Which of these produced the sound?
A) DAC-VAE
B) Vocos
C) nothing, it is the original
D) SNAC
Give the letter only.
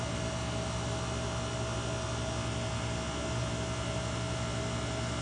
C